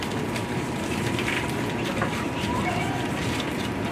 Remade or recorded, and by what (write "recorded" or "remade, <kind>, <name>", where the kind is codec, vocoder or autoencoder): remade, vocoder, BigVGAN v2